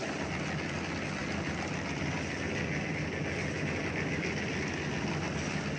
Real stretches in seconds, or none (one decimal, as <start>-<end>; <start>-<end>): 0.0-5.8